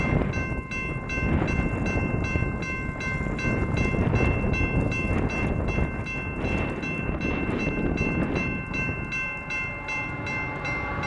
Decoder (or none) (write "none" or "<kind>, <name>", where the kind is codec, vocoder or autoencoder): none